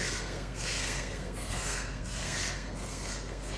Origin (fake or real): fake